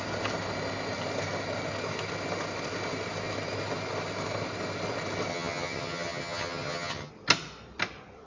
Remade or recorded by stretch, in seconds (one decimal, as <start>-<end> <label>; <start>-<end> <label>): 0.0-5.3 recorded; 5.3-7.1 remade; 7.1-8.3 recorded